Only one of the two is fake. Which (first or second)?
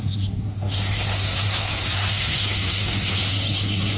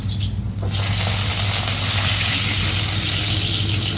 first